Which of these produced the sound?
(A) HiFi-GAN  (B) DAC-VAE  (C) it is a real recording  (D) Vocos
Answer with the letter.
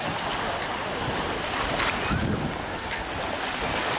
C